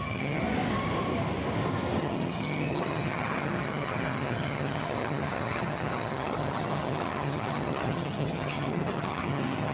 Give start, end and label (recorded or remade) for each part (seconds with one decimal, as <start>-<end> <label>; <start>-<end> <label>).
0.0-0.4 remade; 0.4-2.0 recorded; 2.0-9.7 remade